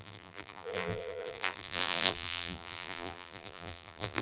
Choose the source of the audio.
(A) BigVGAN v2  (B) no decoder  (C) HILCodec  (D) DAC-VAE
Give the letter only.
A